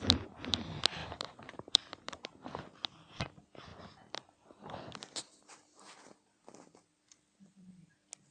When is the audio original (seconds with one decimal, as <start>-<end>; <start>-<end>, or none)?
0.0-1.0; 2.6-8.3